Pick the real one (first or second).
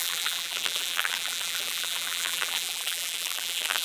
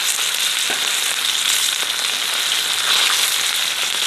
second